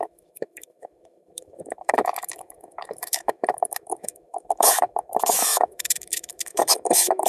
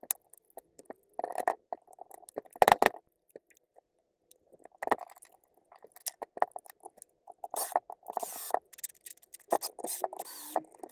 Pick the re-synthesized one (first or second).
first